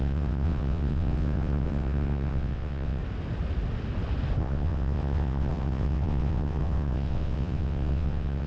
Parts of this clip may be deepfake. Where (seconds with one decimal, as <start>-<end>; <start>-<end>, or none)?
0.0-3.0; 4.4-8.5